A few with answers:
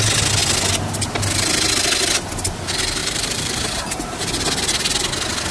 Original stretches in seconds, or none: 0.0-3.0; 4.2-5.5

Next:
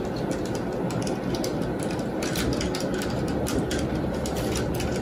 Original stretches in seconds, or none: 0.0-5.0